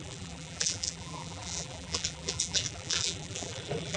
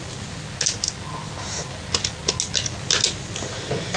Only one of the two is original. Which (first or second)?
second